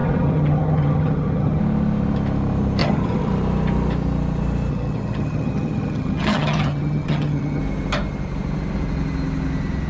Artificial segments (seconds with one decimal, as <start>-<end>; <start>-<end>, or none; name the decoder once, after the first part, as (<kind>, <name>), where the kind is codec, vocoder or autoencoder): 0.0-1.6 (vocoder, HiFi-GAN); 2.8-3.3; 4.7-7.6